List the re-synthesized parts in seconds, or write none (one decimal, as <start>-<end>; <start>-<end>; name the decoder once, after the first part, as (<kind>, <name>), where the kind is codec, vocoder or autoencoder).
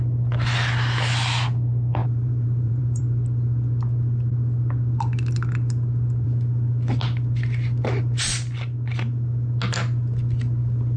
2.0-3.0 (vocoder, BigVGAN v2)